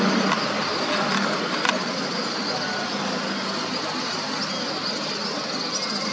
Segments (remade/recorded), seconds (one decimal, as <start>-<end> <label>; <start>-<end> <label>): 0.0-6.1 recorded